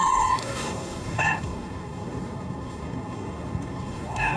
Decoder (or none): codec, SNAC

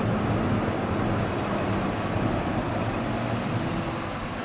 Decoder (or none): none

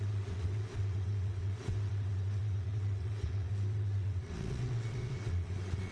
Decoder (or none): vocoder, WaveNeXt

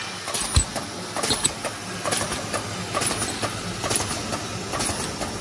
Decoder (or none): none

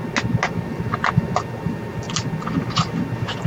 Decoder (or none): none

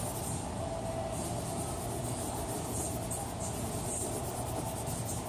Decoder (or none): none